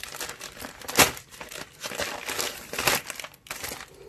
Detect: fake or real real